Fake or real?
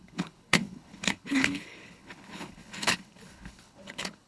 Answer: fake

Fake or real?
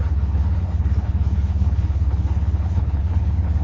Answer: fake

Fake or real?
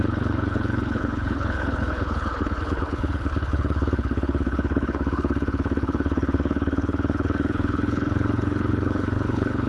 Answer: fake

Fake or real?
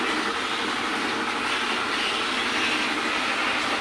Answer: real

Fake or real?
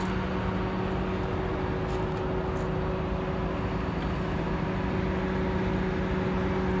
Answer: real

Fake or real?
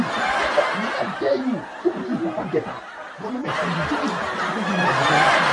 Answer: real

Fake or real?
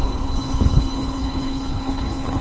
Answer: fake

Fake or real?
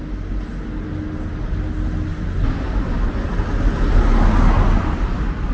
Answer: real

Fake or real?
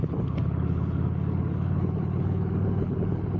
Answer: fake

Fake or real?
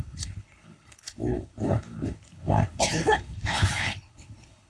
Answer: fake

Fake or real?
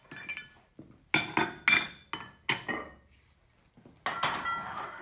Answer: real